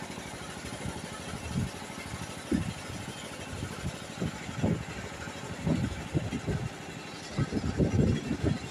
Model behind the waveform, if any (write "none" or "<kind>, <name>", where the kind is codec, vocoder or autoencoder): none